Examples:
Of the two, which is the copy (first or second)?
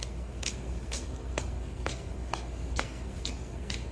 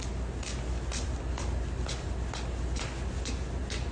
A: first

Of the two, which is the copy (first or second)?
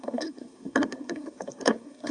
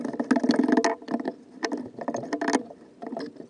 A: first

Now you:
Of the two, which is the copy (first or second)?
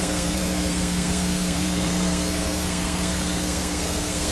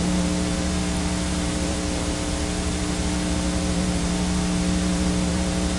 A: first